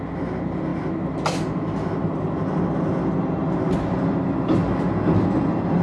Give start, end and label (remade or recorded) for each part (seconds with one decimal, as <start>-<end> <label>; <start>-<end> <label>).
0.0-5.8 recorded